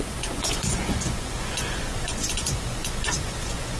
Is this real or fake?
fake